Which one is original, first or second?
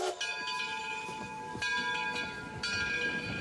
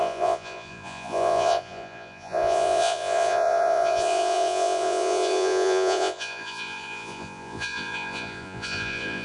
first